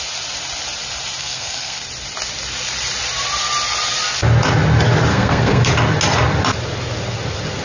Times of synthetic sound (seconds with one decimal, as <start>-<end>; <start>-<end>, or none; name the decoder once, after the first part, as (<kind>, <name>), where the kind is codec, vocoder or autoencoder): 1.2-1.8 (codec, SNAC); 5.1-5.7